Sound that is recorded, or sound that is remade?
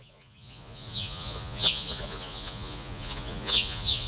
remade